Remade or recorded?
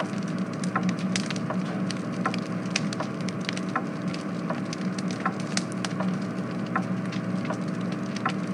recorded